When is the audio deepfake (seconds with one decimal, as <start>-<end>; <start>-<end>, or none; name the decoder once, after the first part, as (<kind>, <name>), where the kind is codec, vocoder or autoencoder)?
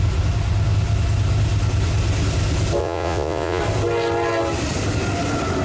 2.8-3.6 (vocoder, Vocos)